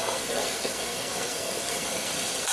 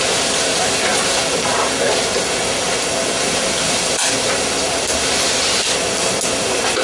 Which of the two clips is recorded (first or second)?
second